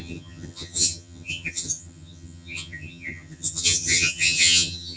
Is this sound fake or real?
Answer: fake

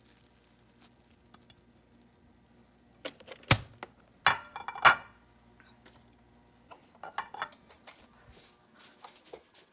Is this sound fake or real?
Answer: real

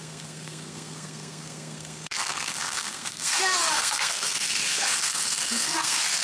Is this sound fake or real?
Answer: fake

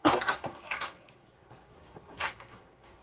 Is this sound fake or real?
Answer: fake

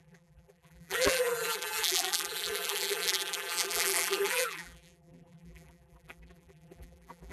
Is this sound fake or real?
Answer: fake